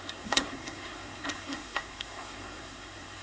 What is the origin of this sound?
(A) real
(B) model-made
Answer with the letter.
B